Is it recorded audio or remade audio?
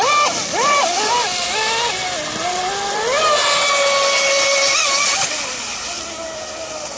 recorded